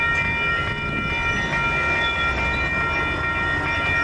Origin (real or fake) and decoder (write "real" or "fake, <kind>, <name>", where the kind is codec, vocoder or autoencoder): real